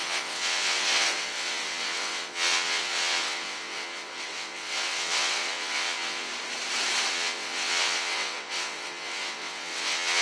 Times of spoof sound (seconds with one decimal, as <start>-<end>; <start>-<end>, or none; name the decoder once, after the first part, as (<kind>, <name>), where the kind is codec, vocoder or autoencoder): 0.0-6.3 (vocoder, WaveNeXt); 7.1-10.2